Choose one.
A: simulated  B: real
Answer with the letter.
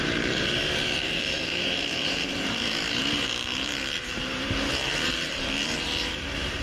A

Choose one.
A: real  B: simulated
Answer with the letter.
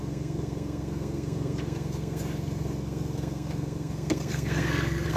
B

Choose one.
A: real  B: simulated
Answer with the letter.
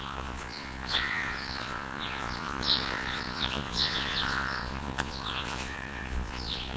B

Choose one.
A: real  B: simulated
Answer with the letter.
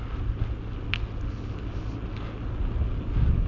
A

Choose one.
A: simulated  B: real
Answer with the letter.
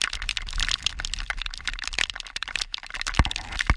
B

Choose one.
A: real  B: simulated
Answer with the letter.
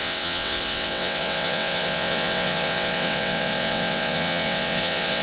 B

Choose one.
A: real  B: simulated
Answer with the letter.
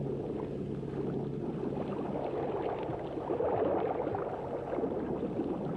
A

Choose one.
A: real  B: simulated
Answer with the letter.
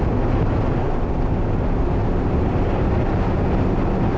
A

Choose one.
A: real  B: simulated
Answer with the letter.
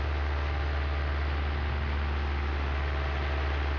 A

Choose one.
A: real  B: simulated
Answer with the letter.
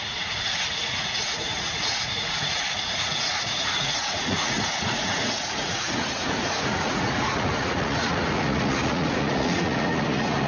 B